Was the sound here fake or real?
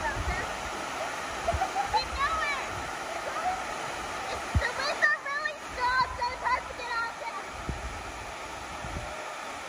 real